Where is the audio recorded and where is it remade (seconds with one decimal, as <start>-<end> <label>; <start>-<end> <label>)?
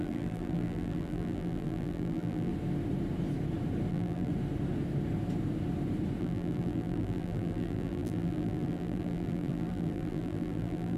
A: 0.0-2.5 remade; 2.5-3.9 recorded; 3.9-4.3 remade; 4.3-6.2 recorded; 6.2-11.0 remade